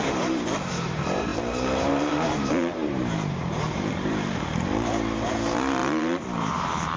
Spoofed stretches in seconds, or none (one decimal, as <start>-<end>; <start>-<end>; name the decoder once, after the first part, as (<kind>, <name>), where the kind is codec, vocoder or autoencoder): 0.0-7.0 (vocoder, BigVGAN v2)